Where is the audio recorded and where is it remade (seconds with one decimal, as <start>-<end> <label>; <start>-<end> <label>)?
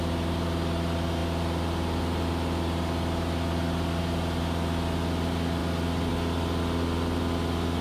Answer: 0.0-7.8 recorded